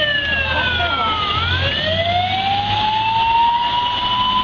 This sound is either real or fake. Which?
real